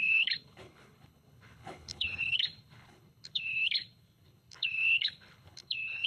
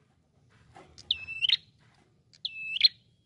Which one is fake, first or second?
first